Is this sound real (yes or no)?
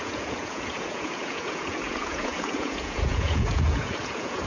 no